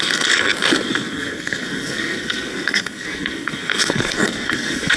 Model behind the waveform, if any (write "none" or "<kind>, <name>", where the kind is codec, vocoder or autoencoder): codec, SNAC